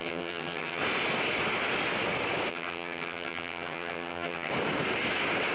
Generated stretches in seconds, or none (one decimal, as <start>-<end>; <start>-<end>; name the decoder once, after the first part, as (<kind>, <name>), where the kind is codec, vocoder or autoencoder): 0.0-0.8 (vocoder, HiFi-GAN); 2.5-4.5